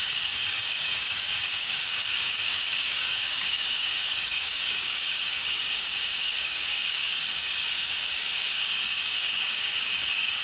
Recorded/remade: remade